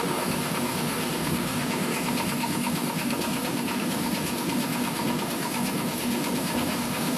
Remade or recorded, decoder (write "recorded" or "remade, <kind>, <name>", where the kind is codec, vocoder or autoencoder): remade, codec, DAC